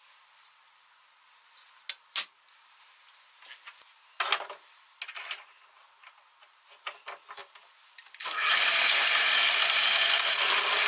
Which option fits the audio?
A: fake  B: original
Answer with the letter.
B